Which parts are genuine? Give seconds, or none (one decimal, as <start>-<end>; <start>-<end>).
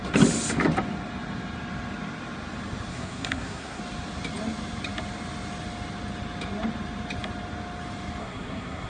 0.0-2.9; 3.8-8.2